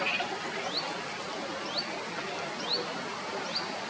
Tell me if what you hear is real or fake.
real